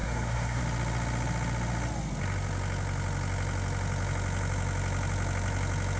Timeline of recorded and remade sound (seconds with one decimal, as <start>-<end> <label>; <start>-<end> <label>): 0.0-0.6 remade; 0.6-6.0 recorded